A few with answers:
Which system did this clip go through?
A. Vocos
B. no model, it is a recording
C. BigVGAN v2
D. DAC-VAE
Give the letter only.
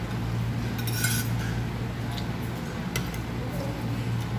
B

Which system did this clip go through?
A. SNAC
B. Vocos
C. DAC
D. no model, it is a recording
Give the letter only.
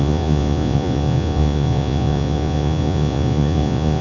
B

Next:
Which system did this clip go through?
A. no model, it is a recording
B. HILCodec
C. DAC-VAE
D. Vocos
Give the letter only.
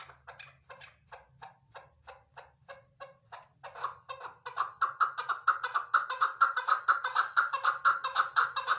A